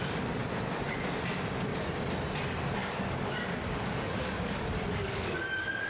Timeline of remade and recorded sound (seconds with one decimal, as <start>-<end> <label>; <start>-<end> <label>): 0.0-2.8 recorded; 2.8-5.9 remade